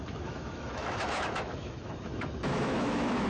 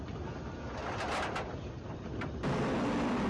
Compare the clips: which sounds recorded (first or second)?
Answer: second